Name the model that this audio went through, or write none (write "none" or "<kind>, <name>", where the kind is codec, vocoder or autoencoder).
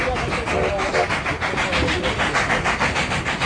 none